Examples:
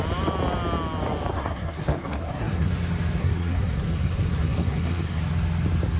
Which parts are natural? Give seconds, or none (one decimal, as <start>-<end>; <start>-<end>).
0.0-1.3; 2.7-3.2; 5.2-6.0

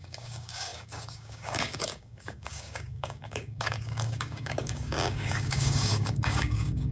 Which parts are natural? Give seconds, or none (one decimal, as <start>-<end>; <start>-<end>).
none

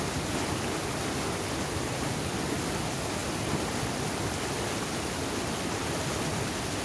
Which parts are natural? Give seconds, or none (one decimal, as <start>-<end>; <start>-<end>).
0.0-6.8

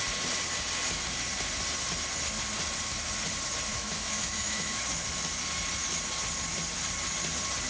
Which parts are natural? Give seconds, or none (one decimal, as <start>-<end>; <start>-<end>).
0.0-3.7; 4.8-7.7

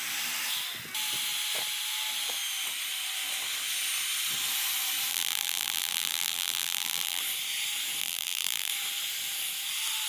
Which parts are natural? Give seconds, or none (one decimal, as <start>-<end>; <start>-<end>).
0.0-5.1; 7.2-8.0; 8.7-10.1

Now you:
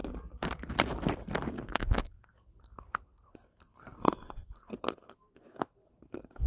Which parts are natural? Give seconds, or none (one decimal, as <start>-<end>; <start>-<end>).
0.0-1.6

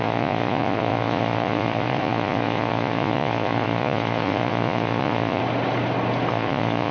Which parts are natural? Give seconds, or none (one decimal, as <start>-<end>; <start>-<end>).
5.4-6.3

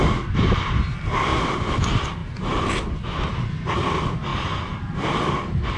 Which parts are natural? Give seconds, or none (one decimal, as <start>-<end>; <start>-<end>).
0.0-1.3; 1.8-2.2; 3.3-5.8